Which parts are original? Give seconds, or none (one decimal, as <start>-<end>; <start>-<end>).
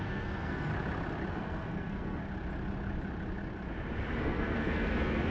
0.7-1.3; 2.2-4.2